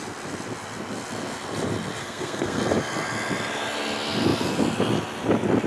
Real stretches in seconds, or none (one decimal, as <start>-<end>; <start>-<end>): 0.0-2.0; 2.6-5.7